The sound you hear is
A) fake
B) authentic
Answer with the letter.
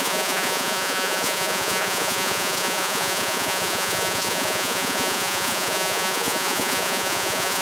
A